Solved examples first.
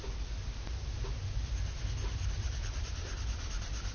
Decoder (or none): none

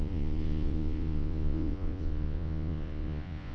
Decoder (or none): vocoder, Vocos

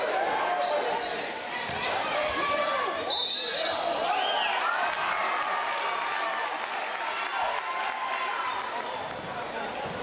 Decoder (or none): none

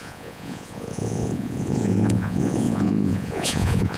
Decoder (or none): vocoder, Vocos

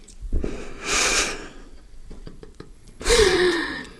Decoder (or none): vocoder, Vocos